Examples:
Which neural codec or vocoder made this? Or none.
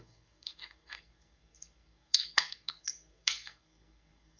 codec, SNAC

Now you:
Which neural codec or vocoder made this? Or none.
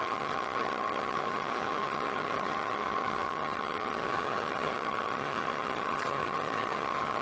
vocoder, HiFi-GAN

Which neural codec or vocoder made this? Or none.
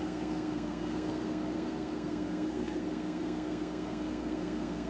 codec, SNAC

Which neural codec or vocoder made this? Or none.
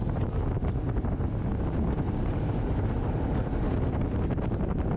none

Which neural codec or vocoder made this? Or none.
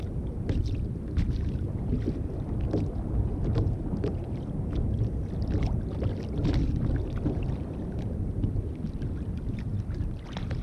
none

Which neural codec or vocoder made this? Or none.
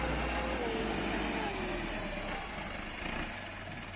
none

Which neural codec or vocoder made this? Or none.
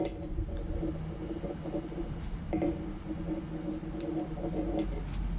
none